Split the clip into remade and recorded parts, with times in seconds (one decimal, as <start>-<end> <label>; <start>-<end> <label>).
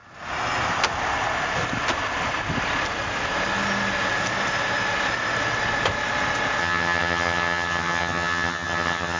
0.0-6.6 recorded; 6.6-9.2 remade